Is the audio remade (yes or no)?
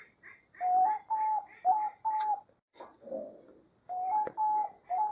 no